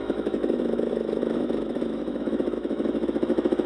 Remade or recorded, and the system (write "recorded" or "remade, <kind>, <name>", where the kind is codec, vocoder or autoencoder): remade, autoencoder, DAC-VAE